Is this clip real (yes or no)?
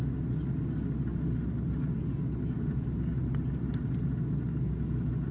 yes